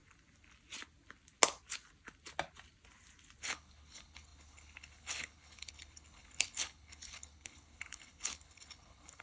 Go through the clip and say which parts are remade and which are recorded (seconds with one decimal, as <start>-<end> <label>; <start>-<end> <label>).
0.0-3.4 recorded; 3.4-9.2 remade